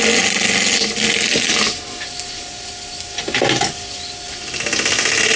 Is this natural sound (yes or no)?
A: yes